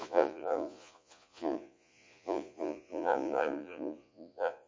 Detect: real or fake fake